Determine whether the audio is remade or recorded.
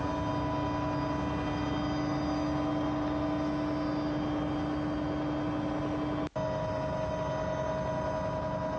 recorded